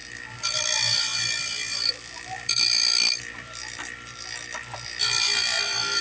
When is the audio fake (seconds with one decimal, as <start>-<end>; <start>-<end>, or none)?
0.0-6.0